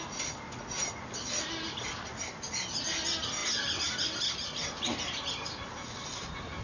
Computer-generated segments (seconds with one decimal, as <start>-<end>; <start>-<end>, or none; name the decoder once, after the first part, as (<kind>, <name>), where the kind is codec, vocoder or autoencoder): none